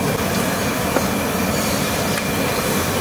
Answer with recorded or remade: recorded